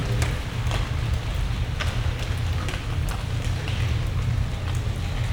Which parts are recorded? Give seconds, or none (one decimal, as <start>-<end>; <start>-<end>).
0.0-5.3